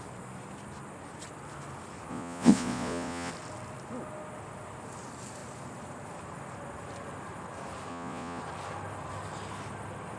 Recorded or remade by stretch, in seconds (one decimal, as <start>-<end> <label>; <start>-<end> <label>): 0.0-2.1 recorded; 2.1-3.3 remade; 3.3-7.9 recorded; 7.9-8.4 remade; 8.4-10.2 recorded